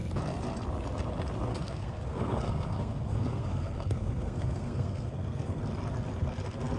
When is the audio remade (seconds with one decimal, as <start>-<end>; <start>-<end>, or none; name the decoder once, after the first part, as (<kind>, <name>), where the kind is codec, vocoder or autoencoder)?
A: 1.5-5.6 (codec, SNAC)